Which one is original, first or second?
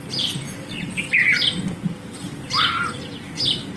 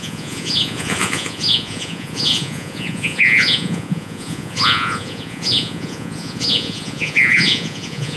first